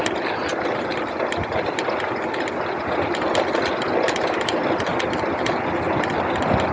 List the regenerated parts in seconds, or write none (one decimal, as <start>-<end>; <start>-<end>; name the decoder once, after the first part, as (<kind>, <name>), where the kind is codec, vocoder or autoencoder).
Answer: 0.5-4.5 (vocoder, BigVGAN v2); 4.9-5.7